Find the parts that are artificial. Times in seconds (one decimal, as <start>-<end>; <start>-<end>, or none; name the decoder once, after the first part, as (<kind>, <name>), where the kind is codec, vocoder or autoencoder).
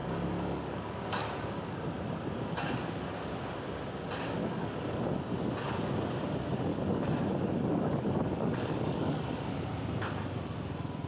0.0-1.8 (codec, DAC); 4.4-5.0; 6.7-7.2; 7.7-9.5